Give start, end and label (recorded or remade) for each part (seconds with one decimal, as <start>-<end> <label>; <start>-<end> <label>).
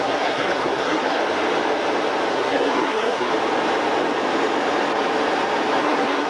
0.0-1.2 remade; 1.2-2.3 recorded; 2.3-3.3 remade; 3.3-5.8 recorded; 5.8-6.3 remade